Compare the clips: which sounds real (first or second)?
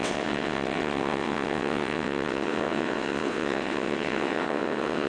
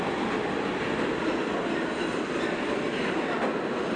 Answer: second